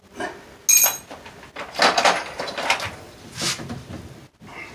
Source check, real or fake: real